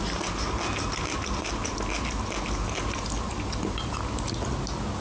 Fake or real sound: real